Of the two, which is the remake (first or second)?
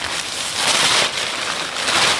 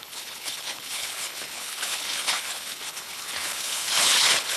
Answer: second